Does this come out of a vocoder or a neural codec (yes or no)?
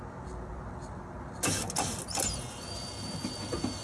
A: no